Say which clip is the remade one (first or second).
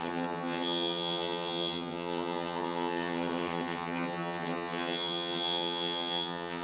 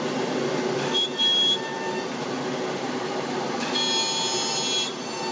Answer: first